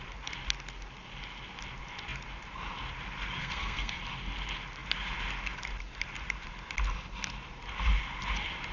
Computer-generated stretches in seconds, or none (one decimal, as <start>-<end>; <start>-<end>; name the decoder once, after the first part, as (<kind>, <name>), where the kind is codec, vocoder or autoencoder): 3.4-4.0 (codec, SNAC)